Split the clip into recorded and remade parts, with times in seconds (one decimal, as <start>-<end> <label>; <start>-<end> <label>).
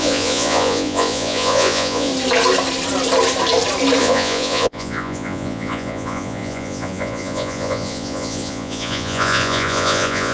0.0-2.1 remade; 2.1-4.0 recorded; 4.0-10.3 remade